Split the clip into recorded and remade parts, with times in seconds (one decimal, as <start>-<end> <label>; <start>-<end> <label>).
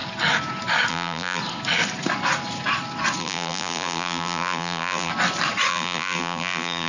0.0-0.9 recorded; 0.9-1.4 remade; 1.4-3.2 recorded; 3.2-5.1 remade; 5.1-5.7 recorded; 5.7-6.9 remade